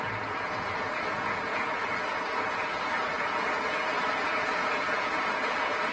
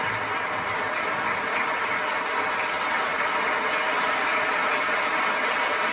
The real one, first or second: second